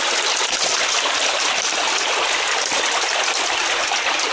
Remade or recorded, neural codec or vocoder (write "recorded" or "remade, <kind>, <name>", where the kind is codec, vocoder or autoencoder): recorded